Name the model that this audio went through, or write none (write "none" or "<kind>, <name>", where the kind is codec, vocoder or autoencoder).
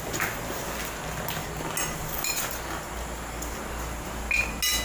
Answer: none